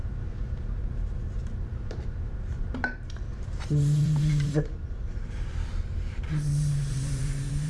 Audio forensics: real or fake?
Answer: fake